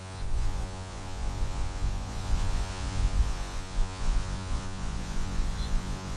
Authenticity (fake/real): fake